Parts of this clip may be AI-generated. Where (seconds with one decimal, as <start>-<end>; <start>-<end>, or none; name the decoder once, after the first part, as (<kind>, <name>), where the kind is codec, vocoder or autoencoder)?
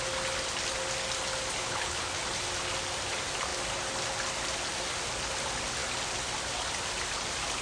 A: 1.6-2.2 (codec, HILCodec)